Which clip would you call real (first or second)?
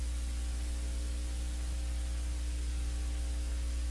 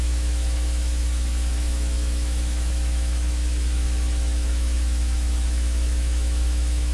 first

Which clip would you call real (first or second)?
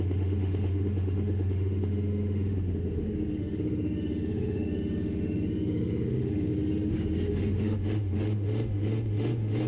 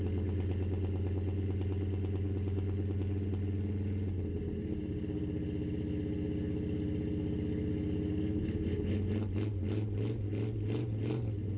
second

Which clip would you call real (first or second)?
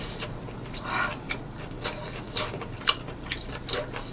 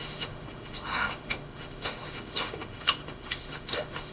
first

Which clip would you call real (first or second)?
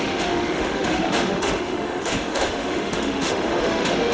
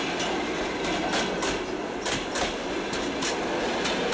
second